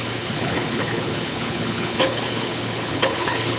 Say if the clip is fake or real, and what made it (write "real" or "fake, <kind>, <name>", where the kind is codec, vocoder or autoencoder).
fake, codec, HILCodec